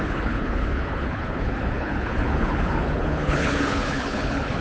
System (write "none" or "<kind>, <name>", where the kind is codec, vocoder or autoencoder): codec, HILCodec